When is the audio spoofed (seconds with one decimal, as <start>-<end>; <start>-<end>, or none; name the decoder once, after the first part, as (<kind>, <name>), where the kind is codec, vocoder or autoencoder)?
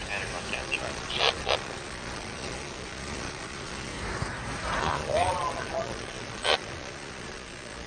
0.5-3.9 (vocoder, Vocos); 4.8-7.9